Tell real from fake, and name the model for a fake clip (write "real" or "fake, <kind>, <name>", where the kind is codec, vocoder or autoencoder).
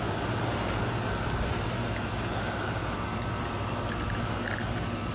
real